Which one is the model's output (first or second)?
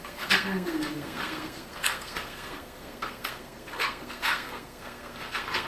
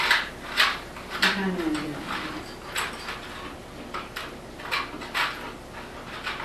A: first